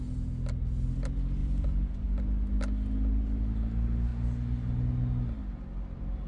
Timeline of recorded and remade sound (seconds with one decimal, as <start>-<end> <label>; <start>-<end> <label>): 0.0-1.4 recorded; 1.4-2.2 remade; 2.2-6.3 recorded